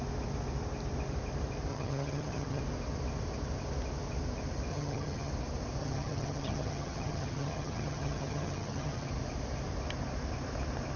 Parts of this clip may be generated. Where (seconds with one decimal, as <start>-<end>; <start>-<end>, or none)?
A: 1.7-2.6; 4.7-5.3; 5.8-9.1